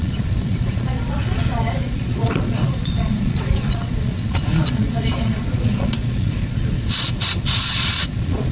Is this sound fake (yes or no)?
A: yes